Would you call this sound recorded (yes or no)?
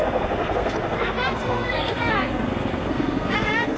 no